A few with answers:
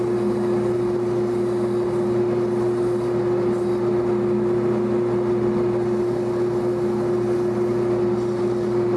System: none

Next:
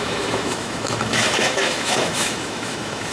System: autoencoder, DAC-VAE